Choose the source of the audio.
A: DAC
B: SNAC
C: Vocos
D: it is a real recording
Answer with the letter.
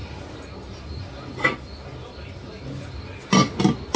D